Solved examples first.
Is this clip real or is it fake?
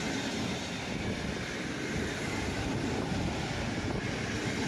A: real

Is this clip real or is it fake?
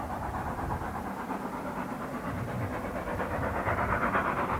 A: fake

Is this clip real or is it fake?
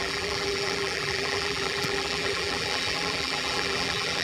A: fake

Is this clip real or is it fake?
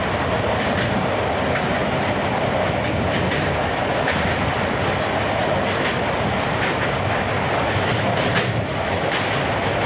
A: real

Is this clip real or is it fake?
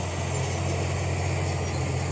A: real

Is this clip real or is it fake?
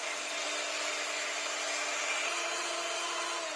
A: real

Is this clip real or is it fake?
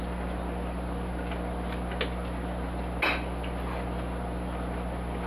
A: real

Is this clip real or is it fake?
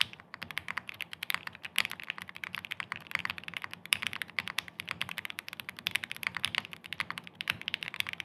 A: fake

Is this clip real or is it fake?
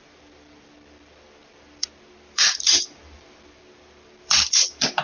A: fake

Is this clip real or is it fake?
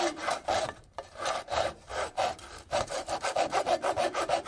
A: fake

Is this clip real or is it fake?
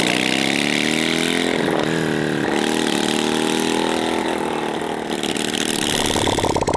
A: real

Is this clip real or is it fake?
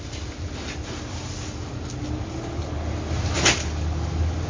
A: real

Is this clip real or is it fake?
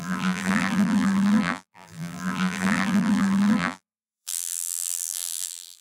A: fake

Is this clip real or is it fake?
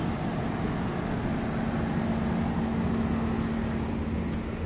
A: real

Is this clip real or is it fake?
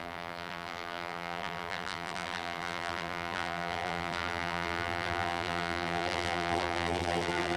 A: fake